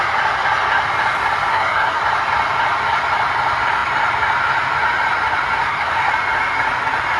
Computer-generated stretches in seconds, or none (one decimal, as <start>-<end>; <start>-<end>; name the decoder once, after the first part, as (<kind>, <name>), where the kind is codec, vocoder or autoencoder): 1.5-2.0 (codec, SNAC); 5.6-6.1